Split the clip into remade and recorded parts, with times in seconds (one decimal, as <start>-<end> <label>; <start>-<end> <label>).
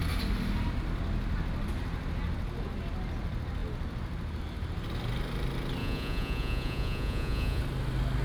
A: 0.0-5.8 recorded; 5.8-7.6 remade; 7.6-8.2 recorded